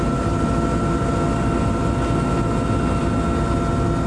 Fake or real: real